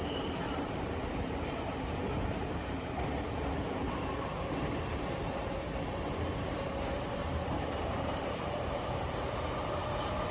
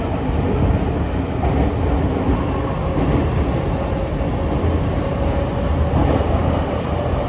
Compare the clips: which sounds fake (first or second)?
first